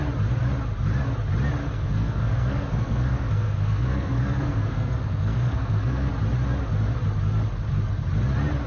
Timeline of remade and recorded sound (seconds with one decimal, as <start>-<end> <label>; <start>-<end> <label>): 0.0-1.6 recorded; 1.6-6.1 remade; 6.1-8.7 recorded